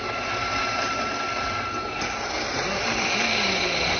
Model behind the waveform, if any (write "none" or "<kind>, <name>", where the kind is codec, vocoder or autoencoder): none